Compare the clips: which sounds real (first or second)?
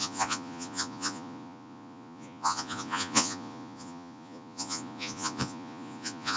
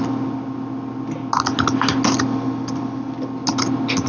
second